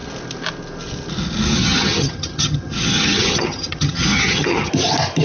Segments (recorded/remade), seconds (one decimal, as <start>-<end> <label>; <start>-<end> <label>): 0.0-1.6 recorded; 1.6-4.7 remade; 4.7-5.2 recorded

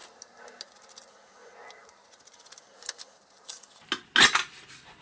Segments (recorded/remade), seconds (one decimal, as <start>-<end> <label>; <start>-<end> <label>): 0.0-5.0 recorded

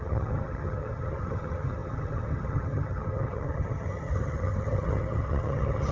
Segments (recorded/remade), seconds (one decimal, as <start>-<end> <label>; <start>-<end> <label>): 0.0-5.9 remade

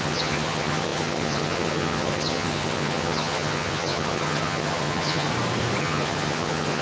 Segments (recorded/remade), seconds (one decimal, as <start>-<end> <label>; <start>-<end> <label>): 0.0-5.3 remade; 5.3-5.8 recorded; 5.8-6.8 remade

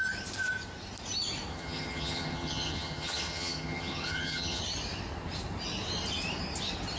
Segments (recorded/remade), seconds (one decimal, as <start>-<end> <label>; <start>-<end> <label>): 0.0-1.5 recorded; 1.5-4.6 remade; 4.6-7.0 recorded

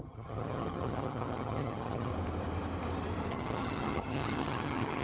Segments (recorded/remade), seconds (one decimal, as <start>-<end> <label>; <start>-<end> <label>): 0.0-2.1 remade; 2.1-3.3 recorded; 3.3-5.0 remade

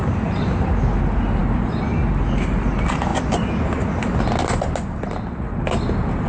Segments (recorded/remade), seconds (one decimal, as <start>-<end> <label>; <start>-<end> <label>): 0.0-6.3 recorded

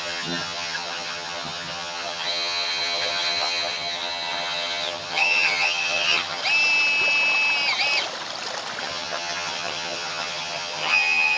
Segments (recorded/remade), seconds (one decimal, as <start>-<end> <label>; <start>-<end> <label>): 0.0-6.4 remade; 6.4-8.8 recorded; 8.8-11.4 remade